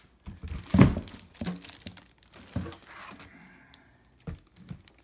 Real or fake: real